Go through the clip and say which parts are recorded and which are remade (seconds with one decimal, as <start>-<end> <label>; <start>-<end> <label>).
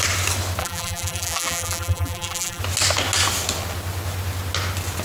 0.0-0.6 recorded; 0.6-2.6 remade; 2.6-5.0 recorded